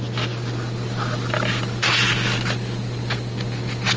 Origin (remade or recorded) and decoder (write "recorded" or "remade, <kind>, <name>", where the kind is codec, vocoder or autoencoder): recorded